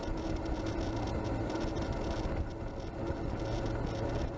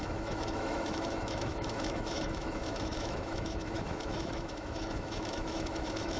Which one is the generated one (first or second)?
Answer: second